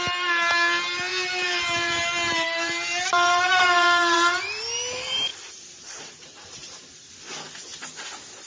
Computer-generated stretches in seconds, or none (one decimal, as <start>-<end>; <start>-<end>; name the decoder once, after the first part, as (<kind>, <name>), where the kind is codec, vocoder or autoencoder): 1.1-4.6 (vocoder, BigVGAN v2); 5.3-7.1